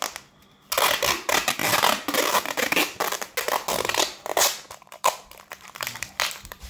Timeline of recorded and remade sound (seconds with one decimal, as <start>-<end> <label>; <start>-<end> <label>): 0.0-4.3 recorded; 4.3-6.1 remade; 6.1-6.7 recorded